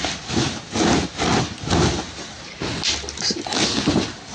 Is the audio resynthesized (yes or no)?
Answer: no